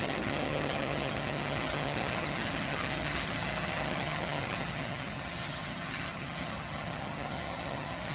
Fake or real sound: fake